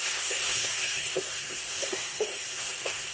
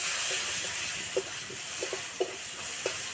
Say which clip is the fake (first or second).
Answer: first